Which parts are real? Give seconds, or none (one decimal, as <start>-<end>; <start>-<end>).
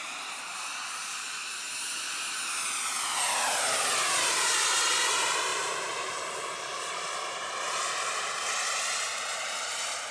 1.4-4.6